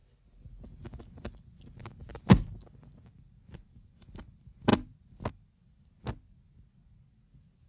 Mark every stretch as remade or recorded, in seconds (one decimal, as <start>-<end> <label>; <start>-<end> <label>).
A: 0.0-2.1 recorded; 2.1-4.2 remade; 4.2-7.7 recorded